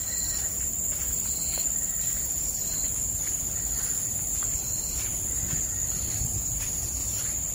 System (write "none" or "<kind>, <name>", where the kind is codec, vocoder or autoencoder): none